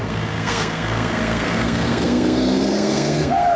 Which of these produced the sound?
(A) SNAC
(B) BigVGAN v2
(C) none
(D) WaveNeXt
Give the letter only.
A